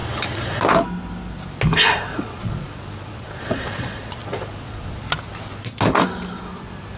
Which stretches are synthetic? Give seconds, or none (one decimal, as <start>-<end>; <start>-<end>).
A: 0.0-0.6; 2.1-5.0